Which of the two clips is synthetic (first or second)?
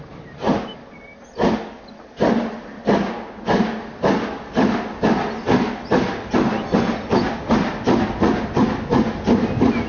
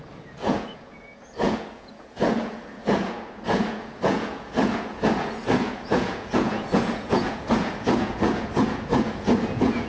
second